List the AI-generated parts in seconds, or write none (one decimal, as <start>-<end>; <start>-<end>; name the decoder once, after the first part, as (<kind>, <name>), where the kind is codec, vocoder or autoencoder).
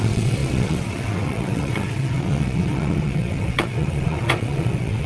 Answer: 0.0-5.1 (vocoder, WaveNeXt)